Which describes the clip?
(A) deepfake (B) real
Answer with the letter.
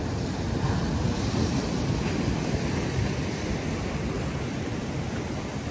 B